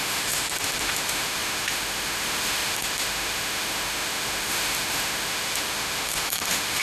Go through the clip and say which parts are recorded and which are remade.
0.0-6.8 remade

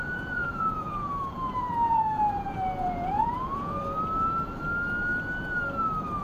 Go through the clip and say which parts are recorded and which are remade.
0.0-3.8 remade; 3.8-6.2 recorded

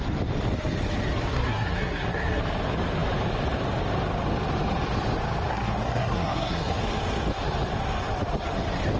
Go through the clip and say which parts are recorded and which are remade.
0.0-1.3 recorded; 1.3-2.4 remade; 2.4-5.5 recorded; 5.5-6.8 remade; 6.8-9.0 recorded

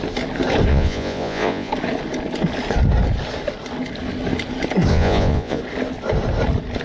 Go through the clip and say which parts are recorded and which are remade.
0.0-0.7 recorded; 0.7-1.7 remade; 1.7-4.9 recorded; 4.9-5.6 remade; 5.6-6.8 recorded

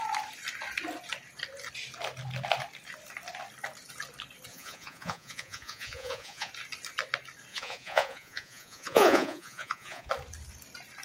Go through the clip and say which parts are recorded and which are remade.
0.0-4.5 recorded; 4.5-6.5 remade; 6.5-7.5 recorded; 7.5-10.1 remade; 10.1-11.0 recorded